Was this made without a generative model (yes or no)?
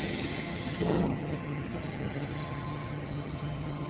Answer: no